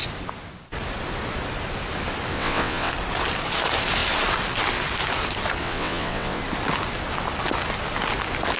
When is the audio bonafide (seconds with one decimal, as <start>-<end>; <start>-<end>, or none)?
0.0-2.3; 2.9-5.6; 6.4-8.6